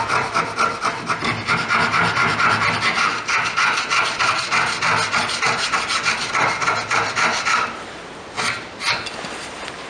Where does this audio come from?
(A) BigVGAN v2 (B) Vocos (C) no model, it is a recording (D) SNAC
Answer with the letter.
C